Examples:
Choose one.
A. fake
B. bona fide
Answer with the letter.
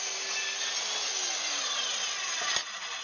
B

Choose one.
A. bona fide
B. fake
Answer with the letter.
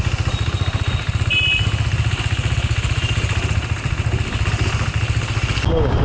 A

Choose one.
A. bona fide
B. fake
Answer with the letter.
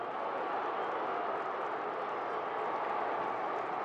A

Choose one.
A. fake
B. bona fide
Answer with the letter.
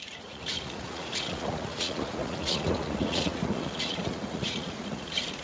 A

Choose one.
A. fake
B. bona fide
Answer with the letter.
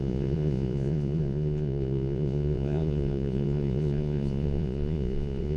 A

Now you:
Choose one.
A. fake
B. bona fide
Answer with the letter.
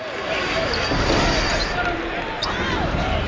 B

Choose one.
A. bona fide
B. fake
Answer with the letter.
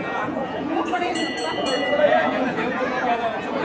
B